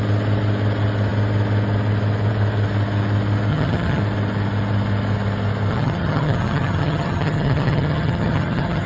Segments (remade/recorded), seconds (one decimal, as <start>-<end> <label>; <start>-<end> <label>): 0.0-3.5 recorded; 3.5-4.0 remade; 4.0-5.7 recorded; 5.7-8.9 remade